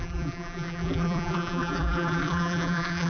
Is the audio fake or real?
fake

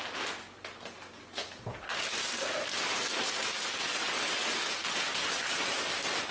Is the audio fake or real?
real